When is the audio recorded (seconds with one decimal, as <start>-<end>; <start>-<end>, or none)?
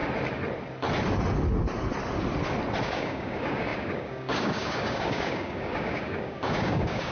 0.0-2.8